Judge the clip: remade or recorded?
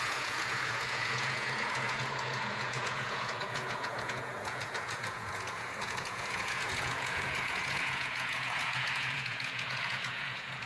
remade